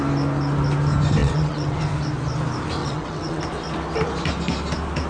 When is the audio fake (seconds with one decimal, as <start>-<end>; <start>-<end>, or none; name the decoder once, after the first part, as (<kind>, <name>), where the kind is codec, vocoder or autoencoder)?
1.2-1.8 (vocoder, WaveNeXt); 2.8-3.4